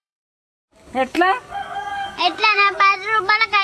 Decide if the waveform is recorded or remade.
remade